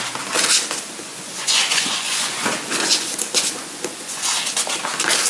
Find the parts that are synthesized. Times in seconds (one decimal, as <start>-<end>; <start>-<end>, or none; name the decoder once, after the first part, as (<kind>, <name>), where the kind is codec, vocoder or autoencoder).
1.1-4.3 (vocoder, Vocos)